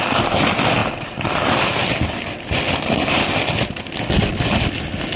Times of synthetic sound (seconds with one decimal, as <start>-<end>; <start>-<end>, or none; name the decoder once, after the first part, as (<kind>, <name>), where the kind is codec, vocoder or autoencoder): 0.8-1.3 (vocoder, BigVGAN v2)